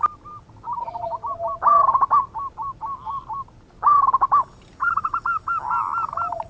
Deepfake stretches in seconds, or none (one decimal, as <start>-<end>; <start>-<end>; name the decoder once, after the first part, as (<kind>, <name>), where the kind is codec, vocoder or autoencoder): none